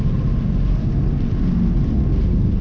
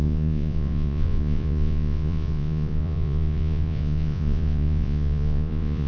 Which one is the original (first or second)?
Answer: first